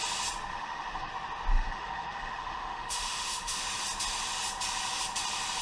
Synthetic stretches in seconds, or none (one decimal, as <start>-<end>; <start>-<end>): 0.5-1.1; 1.5-3.6